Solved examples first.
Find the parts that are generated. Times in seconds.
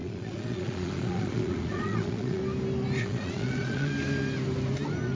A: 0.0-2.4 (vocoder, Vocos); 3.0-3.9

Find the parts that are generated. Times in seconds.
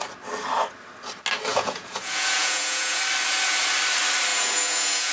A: 1.5-3.0 (vocoder, Vocos); 4.3-5.1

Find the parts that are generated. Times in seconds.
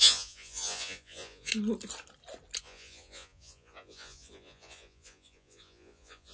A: 0.0-1.5 (vocoder, Vocos); 2.6-6.3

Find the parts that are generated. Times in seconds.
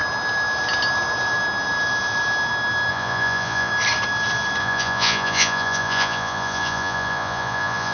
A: 2.9-3.7 (vocoder, Vocos); 4.6-7.9